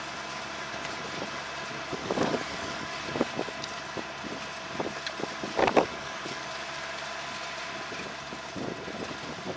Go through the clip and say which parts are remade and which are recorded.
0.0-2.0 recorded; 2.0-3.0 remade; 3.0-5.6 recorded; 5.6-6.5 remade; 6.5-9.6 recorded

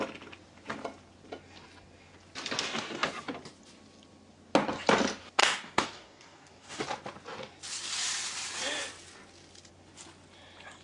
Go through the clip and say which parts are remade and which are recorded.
0.0-5.4 recorded; 5.4-6.8 remade; 6.8-10.8 recorded

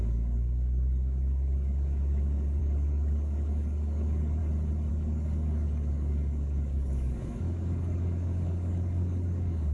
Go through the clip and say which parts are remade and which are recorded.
0.0-4.4 remade; 4.4-4.9 recorded; 4.9-9.7 remade

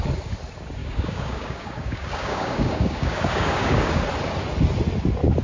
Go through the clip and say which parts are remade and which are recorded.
0.0-0.8 recorded; 0.8-4.0 remade; 4.0-5.4 recorded